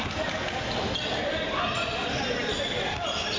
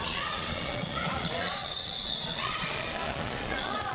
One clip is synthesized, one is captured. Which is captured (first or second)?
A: first